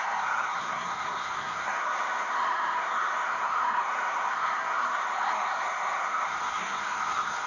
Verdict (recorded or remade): remade